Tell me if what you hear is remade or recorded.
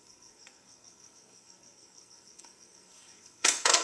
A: remade